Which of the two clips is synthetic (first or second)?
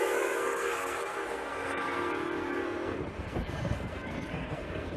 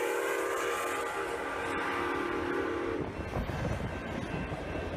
first